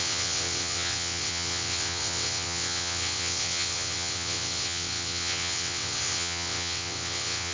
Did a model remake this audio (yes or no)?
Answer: yes